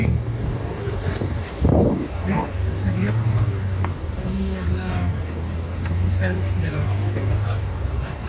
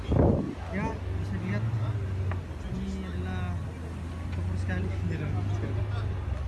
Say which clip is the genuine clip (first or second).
second